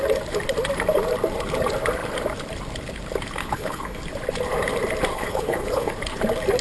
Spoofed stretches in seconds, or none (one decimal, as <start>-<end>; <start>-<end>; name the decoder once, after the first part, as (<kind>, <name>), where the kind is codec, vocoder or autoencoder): 3.4-4.0 (codec, HILCodec); 5.1-5.9

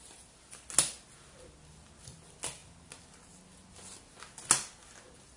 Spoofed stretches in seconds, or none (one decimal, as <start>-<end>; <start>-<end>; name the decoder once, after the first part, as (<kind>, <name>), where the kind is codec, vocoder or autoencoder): none

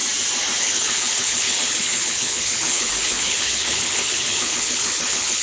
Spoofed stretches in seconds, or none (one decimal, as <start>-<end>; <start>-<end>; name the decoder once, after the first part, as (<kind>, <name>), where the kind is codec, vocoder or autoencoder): 0.6-5.4 (codec, HILCodec)

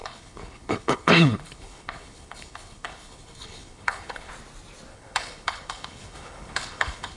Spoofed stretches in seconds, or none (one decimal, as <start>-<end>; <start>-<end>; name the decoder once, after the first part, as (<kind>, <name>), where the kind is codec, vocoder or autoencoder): 0.0-4.3 (codec, HILCodec); 4.9-7.2